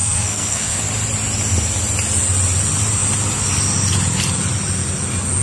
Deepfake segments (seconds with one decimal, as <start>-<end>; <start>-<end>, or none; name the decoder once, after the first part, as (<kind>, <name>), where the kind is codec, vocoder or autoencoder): 0.0-0.8 (codec, SNAC)